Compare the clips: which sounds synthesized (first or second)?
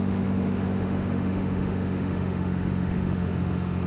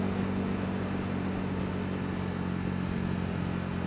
first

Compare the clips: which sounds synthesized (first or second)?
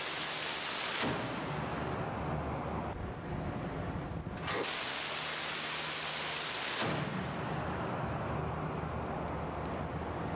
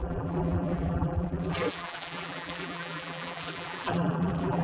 second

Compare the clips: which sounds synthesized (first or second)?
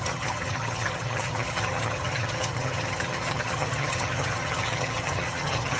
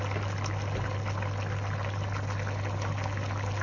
first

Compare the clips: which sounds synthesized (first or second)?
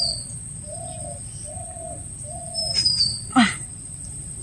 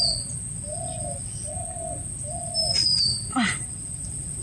first